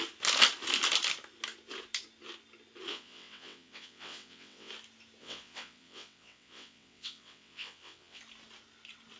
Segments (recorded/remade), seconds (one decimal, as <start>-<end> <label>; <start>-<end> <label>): 0.0-2.9 recorded; 2.9-4.7 remade; 4.7-5.2 recorded; 5.2-8.2 remade; 8.2-9.2 recorded